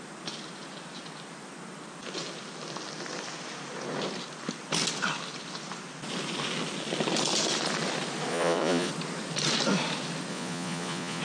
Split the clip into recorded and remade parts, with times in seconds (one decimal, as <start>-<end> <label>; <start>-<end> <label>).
0.0-8.3 recorded; 8.3-8.9 remade; 8.9-10.3 recorded; 10.3-11.2 remade